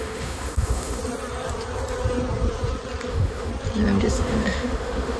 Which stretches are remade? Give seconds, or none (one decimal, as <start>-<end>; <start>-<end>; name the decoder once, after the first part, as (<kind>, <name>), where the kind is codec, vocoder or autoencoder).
0.0-1.0 (autoencoder, DAC-VAE); 3.1-3.5; 4.1-5.2